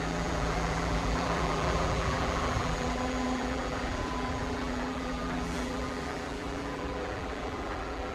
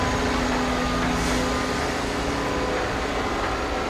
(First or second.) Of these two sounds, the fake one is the first